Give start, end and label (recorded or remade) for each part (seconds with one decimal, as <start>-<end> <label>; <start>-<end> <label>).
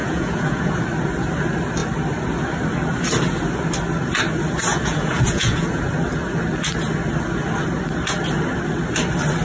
0.0-0.8 remade; 0.8-4.7 recorded; 4.7-5.8 remade; 5.8-9.4 recorded